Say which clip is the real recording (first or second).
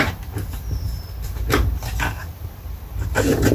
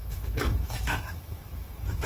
first